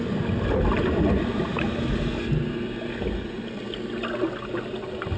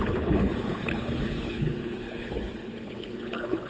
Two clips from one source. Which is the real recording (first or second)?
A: first